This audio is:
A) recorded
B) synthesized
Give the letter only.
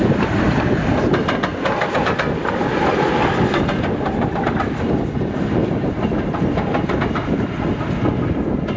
A